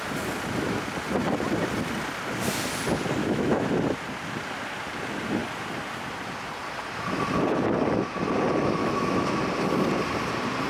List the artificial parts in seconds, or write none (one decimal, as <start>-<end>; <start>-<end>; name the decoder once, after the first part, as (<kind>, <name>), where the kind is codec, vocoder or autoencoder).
3.2-3.7 (autoencoder, DAC-VAE); 8.8-9.4